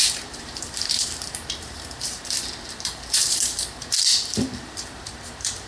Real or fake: fake